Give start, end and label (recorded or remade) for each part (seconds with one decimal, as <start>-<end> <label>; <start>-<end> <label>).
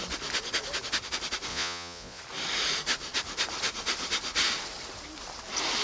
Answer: 0.0-1.5 recorded; 1.5-2.2 remade; 2.2-5.8 recorded